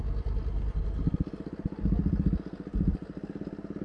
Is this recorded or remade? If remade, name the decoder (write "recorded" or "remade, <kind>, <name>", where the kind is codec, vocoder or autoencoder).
recorded